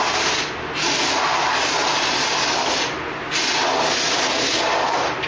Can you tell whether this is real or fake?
real